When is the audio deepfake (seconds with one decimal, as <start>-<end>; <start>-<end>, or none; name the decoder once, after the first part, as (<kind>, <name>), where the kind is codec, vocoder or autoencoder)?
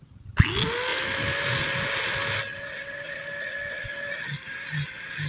none